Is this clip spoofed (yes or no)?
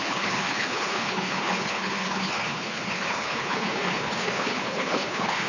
yes